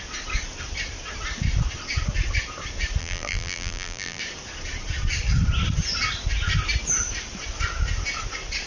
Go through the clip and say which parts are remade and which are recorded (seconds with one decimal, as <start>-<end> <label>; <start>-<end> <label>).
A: 0.0-3.0 recorded; 3.0-4.2 remade; 4.2-8.7 recorded